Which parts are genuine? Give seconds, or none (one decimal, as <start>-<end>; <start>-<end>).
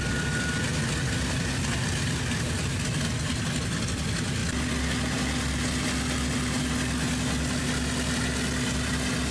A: 0.0-9.3